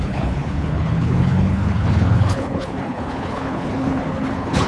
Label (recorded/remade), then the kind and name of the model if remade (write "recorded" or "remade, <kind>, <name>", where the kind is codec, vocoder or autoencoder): remade, codec, HILCodec